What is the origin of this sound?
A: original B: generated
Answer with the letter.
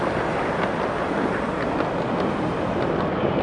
A